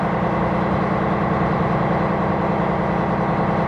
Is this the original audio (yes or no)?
yes